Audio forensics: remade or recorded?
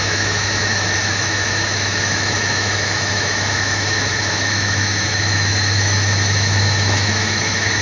remade